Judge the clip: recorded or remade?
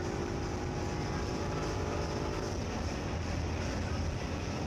recorded